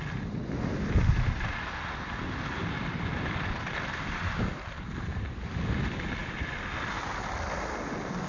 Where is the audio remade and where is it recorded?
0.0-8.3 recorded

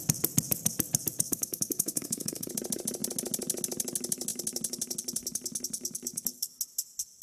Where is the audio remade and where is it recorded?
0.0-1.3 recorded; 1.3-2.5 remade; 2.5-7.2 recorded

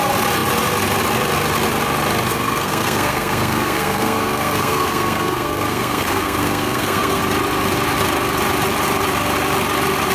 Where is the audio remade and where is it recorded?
0.0-2.3 recorded; 2.3-7.2 remade; 7.2-10.1 recorded

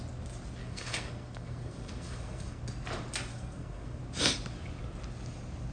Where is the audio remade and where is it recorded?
0.0-0.6 recorded; 0.6-2.6 remade; 2.6-3.3 recorded; 3.3-4.0 remade; 4.0-5.7 recorded